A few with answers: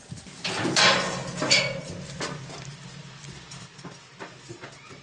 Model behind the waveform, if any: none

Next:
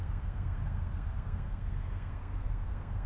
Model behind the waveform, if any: codec, SNAC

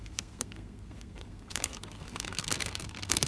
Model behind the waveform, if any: codec, SNAC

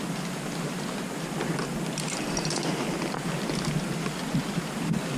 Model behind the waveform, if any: none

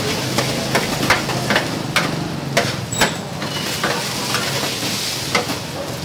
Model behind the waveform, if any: none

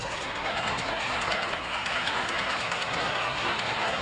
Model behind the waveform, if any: codec, SNAC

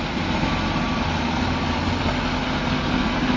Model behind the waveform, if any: none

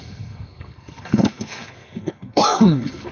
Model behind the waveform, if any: codec, SNAC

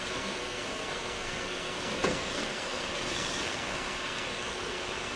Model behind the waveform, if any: codec, SNAC